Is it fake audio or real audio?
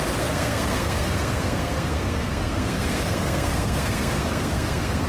fake